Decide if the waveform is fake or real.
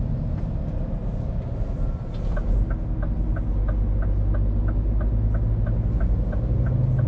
real